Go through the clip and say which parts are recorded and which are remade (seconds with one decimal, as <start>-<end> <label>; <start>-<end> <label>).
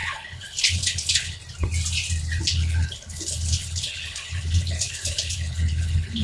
0.0-1.4 remade; 1.4-2.4 recorded; 2.4-6.2 remade